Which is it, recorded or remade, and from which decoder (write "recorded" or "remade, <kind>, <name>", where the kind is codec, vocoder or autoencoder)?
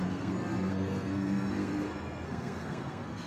remade, codec, SNAC